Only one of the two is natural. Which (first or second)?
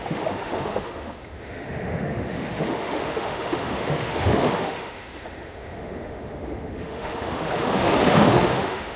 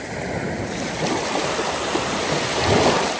second